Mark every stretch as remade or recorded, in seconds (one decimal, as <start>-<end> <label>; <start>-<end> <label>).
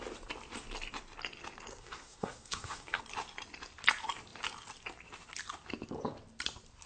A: 0.0-1.7 recorded; 1.7-3.0 remade; 3.0-6.9 recorded